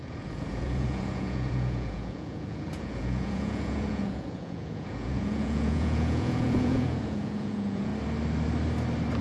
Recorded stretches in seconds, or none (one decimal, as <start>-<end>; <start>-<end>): 7.9-9.2